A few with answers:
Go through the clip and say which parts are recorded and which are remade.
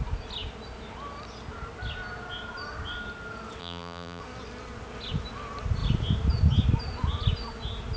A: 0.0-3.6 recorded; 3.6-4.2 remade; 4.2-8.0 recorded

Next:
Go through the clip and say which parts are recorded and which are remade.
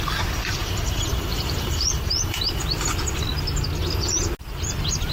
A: 0.0-0.6 recorded; 0.6-2.6 remade; 2.6-5.1 recorded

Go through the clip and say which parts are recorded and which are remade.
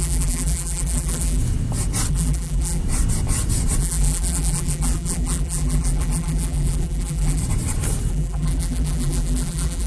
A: 0.0-1.4 remade; 1.4-2.1 recorded; 2.1-2.8 remade; 2.8-3.8 recorded; 3.8-7.4 remade; 7.4-8.1 recorded; 8.1-9.9 remade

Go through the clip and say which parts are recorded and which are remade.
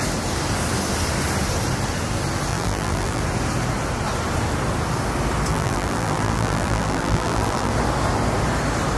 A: 0.0-2.5 recorded; 2.5-3.2 remade; 3.2-5.5 recorded; 5.5-7.7 remade; 7.7-9.0 recorded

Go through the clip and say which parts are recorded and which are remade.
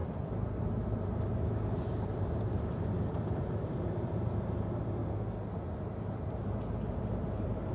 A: 0.0-5.0 remade; 5.0-6.1 recorded; 6.1-7.7 remade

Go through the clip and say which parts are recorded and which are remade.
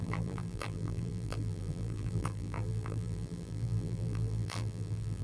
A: 0.0-5.2 remade